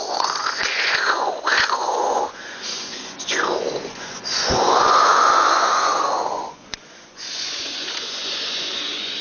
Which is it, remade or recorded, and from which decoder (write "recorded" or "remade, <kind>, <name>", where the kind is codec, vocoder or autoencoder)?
remade, vocoder, Vocos